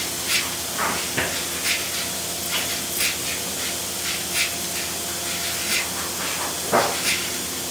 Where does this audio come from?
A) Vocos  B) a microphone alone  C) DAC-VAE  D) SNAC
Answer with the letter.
B